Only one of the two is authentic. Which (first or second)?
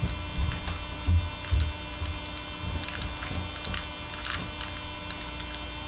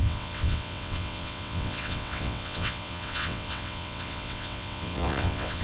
first